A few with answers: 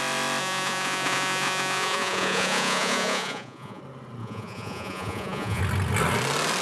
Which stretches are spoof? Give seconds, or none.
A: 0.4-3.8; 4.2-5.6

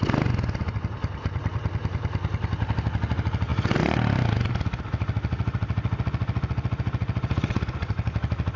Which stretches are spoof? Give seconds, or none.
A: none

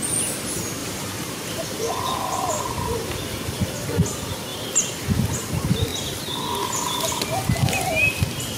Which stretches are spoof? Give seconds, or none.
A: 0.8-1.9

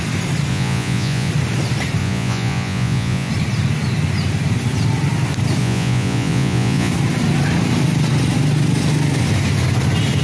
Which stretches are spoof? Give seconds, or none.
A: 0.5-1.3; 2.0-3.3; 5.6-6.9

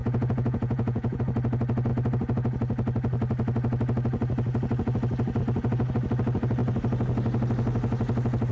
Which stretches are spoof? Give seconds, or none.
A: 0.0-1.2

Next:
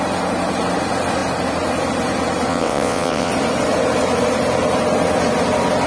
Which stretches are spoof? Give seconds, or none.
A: 2.5-3.3